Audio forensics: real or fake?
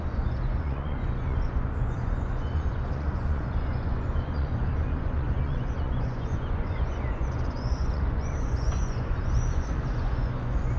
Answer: fake